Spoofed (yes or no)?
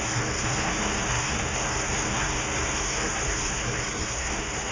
yes